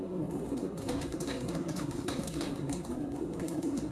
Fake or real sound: fake